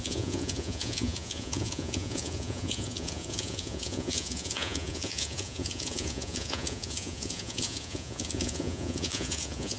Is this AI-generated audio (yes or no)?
yes